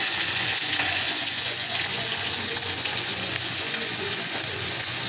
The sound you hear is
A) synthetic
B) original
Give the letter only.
A